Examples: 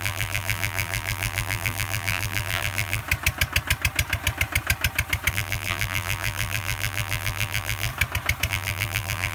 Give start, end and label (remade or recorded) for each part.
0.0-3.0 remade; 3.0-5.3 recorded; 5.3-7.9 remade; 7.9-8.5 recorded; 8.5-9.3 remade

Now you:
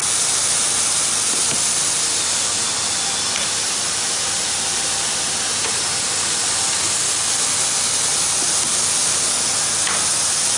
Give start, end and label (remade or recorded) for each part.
0.0-3.4 recorded; 3.4-6.1 remade; 6.1-10.6 recorded

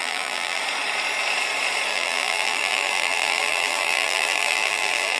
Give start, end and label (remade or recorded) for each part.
0.0-0.6 remade; 0.6-1.9 recorded; 1.9-5.2 remade